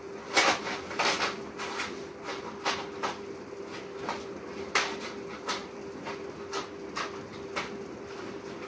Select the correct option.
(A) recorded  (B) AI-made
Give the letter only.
A